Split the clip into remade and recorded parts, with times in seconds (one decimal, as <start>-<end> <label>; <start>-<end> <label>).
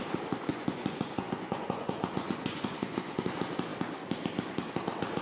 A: 0.0-0.5 recorded; 0.5-3.2 remade; 3.2-5.2 recorded